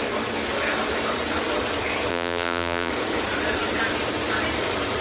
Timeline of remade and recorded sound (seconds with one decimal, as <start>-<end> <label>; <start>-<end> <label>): 0.0-2.1 recorded; 2.1-2.9 remade; 2.9-5.0 recorded